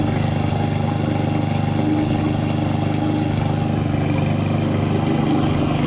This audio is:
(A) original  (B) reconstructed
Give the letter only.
A